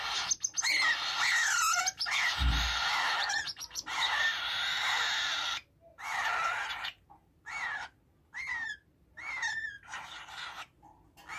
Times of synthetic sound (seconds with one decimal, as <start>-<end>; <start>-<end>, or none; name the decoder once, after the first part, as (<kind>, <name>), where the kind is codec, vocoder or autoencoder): 5.9-7.6 (vocoder, BigVGAN v2)